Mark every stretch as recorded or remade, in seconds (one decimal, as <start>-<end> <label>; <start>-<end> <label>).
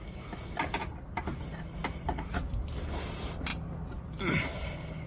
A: 0.0-1.8 recorded; 1.8-2.3 remade; 2.3-5.1 recorded